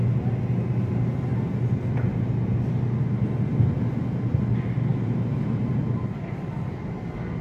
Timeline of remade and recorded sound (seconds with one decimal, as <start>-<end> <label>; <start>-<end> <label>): 0.0-4.9 recorded; 4.9-5.7 remade; 5.7-7.4 recorded